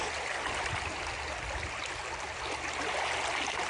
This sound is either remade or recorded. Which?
recorded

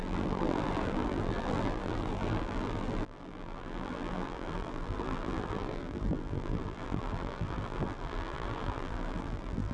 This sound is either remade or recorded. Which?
remade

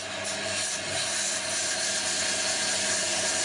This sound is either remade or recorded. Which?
recorded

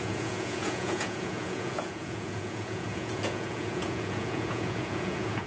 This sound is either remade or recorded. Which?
remade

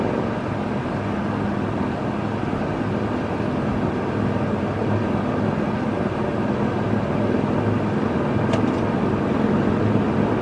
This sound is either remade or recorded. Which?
recorded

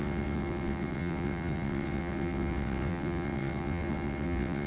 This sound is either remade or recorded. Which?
remade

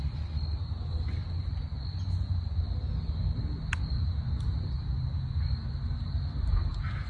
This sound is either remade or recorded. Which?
recorded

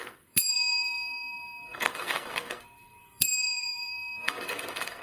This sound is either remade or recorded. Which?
remade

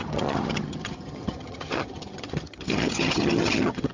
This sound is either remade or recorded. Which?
remade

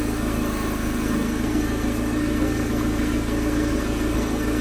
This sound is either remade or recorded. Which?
remade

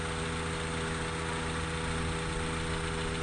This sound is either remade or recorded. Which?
recorded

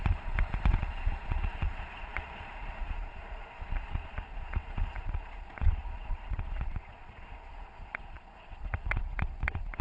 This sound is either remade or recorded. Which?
remade